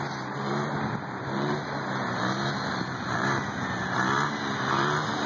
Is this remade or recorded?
remade